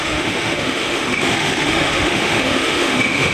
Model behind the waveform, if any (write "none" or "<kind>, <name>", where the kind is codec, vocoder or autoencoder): autoencoder, DAC-VAE